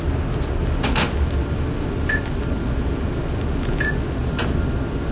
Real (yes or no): yes